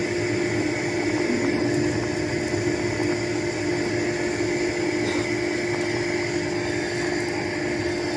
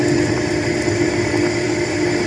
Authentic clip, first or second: first